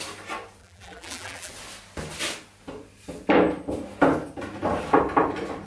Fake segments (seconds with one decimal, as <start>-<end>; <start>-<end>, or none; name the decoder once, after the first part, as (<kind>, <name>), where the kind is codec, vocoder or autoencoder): 0.6-1.5 (vocoder, BigVGAN v2)